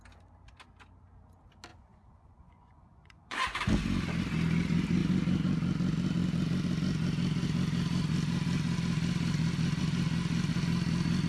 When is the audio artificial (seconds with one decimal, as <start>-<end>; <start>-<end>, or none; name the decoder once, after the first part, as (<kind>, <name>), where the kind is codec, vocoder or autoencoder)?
1.7-3.6 (vocoder, Vocos)